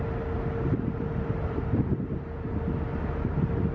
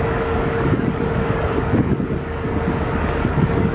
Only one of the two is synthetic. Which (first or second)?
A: second